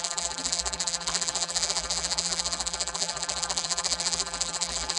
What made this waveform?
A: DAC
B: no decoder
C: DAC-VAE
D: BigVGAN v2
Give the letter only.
D